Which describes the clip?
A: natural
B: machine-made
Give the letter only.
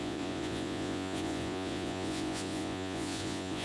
B